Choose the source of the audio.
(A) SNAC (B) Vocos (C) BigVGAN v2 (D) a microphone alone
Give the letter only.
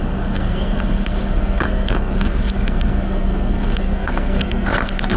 A